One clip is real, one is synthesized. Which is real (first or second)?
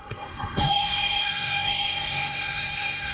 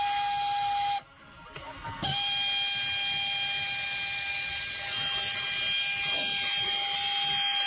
second